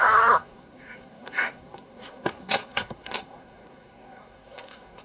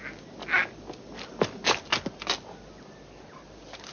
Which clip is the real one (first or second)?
second